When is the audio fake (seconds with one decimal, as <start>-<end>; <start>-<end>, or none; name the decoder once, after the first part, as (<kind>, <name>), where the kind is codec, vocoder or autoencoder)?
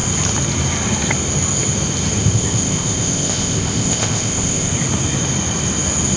2.2-4.7 (codec, ZipCodec)